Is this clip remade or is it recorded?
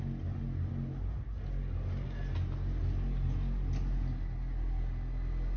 recorded